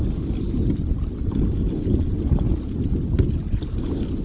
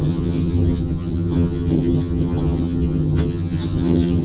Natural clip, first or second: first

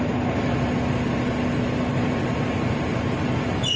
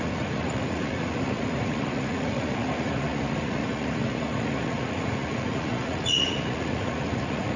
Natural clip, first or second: first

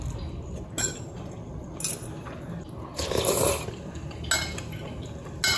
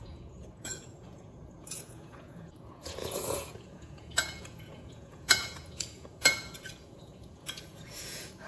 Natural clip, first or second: first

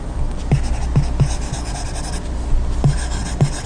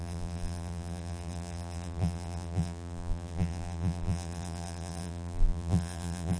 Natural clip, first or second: first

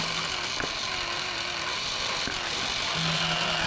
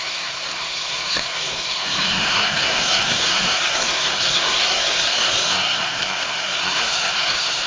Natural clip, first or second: first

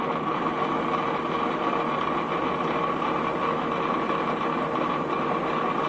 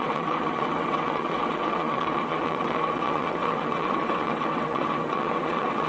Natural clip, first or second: first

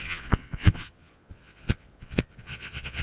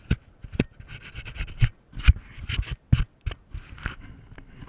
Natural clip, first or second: second